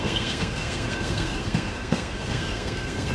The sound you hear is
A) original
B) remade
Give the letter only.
B